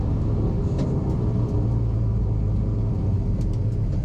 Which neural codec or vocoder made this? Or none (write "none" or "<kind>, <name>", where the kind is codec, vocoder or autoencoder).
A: none